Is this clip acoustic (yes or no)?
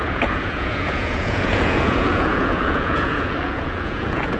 no